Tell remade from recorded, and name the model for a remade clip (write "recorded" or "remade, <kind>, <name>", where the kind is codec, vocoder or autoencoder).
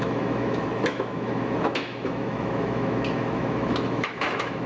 remade, autoencoder, DAC-VAE